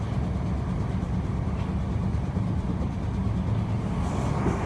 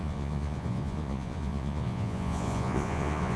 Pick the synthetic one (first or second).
second